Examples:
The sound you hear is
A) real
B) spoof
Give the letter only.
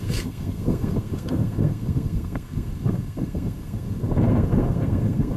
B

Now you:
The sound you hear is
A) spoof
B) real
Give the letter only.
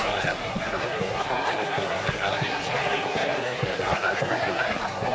A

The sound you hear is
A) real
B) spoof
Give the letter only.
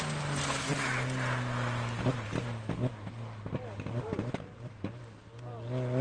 A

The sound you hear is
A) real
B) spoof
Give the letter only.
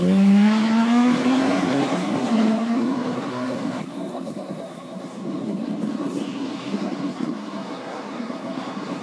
B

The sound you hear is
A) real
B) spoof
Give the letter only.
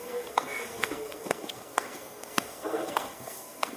B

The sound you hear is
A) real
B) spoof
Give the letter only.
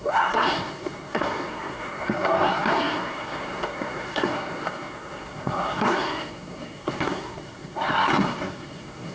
B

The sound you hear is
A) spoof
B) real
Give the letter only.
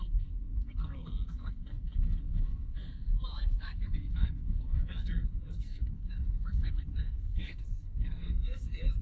A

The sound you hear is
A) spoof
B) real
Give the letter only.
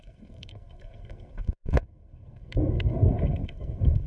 A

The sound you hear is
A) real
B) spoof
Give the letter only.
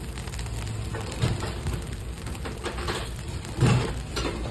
A